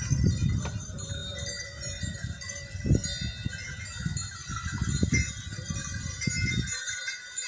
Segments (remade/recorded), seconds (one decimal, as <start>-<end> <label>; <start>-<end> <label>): 0.0-3.0 remade; 3.0-6.5 recorded; 6.5-7.5 remade